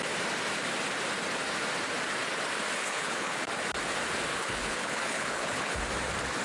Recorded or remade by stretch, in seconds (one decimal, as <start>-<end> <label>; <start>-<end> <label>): 0.0-2.8 recorded; 2.8-3.5 remade; 3.5-4.3 recorded; 4.3-5.8 remade; 5.8-6.4 recorded